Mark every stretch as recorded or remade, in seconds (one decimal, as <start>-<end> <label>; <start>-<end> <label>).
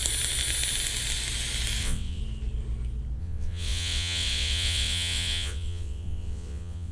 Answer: 0.0-1.8 recorded; 1.8-2.2 remade; 2.2-3.2 recorded; 3.2-6.9 remade